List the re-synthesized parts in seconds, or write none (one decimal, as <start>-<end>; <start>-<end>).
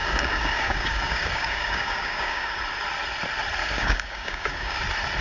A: 0.0-2.6; 3.6-4.8